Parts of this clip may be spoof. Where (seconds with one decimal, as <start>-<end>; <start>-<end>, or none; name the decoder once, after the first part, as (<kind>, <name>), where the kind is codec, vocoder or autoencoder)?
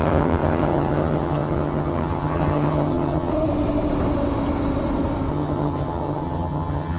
0.0-3.3 (vocoder, HiFi-GAN); 5.3-7.0